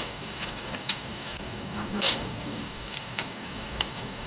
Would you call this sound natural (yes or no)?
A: no